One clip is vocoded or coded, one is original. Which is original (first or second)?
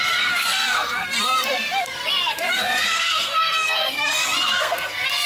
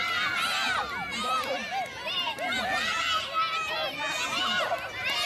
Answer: second